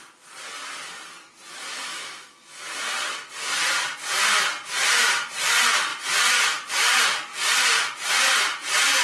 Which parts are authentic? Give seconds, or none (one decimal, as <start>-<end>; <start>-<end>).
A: 0.0-1.7; 2.6-9.0